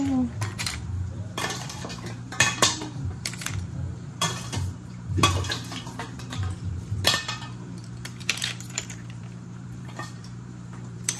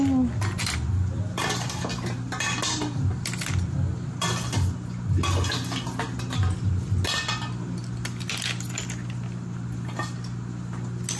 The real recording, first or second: second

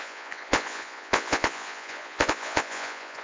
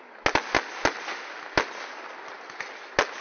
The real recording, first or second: second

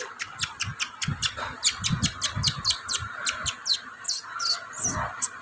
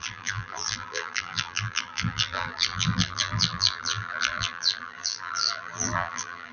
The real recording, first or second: first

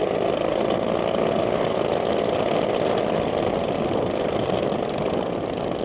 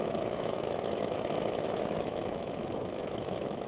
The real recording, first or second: first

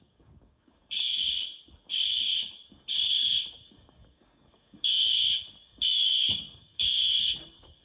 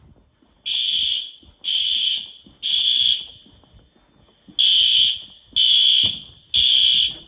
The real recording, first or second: second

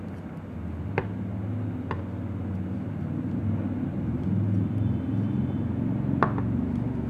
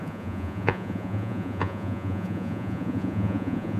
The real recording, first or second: first